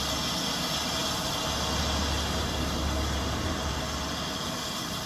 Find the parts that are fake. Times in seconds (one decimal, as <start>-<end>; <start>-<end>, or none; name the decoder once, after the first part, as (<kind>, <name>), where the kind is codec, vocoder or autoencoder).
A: none